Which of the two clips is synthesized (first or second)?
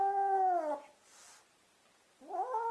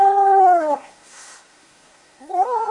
second